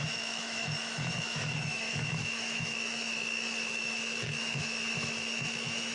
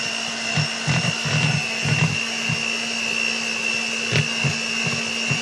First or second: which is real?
second